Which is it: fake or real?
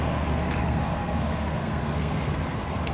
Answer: fake